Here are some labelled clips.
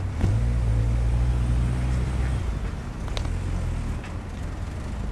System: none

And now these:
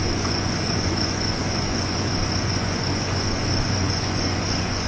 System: vocoder, Vocos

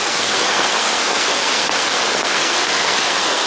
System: codec, SNAC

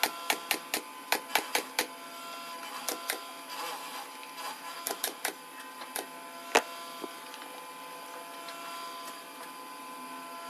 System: none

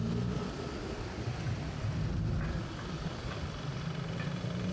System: none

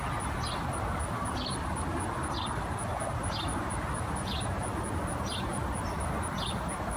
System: none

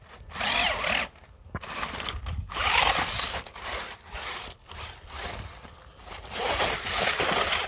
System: none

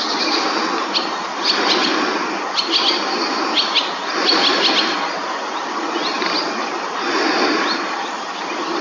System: none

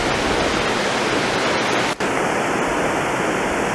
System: none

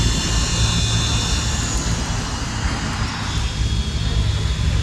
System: none